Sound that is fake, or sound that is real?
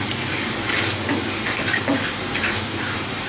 real